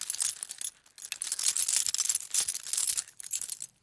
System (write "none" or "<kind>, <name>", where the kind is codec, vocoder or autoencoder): none